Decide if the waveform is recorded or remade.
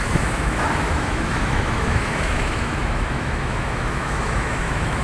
remade